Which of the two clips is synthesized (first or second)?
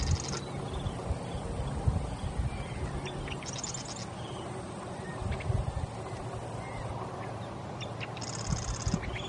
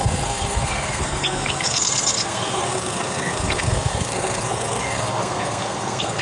second